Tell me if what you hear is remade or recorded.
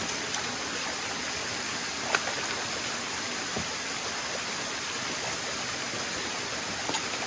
recorded